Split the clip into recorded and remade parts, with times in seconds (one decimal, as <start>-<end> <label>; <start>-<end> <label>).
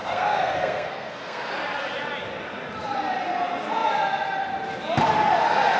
0.0-1.5 remade; 1.5-5.8 recorded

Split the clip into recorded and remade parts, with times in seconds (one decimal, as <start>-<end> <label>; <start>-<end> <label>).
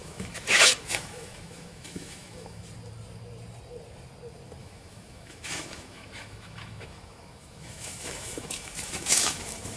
0.0-2.6 remade; 2.6-4.6 recorded; 4.6-9.8 remade